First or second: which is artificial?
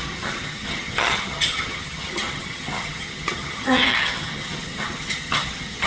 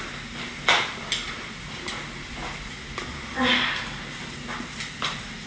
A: first